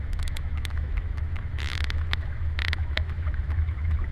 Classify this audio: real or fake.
fake